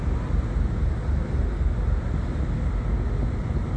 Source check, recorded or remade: recorded